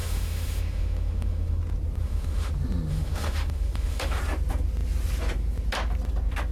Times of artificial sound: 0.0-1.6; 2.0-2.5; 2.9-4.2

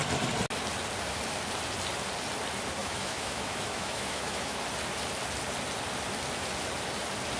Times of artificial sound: 2.8-4.6

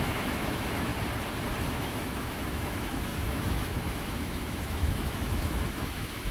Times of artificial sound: 0.0-0.9; 1.7-6.3

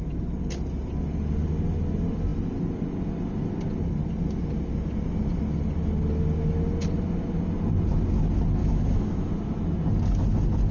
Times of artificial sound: 8.6-9.3

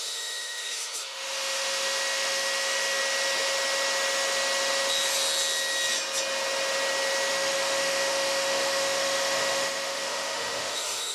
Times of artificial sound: 0.0-3.0; 7.3-11.1

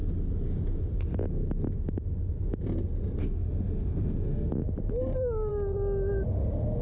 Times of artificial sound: 3.2-4.5